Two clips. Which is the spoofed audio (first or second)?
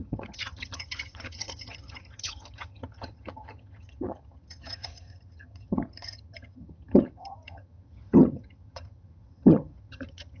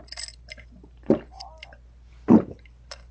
first